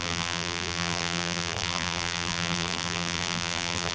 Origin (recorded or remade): remade